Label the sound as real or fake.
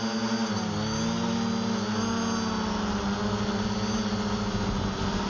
real